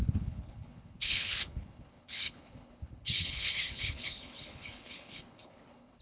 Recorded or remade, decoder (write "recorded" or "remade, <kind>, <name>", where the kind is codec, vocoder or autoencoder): remade, codec, HILCodec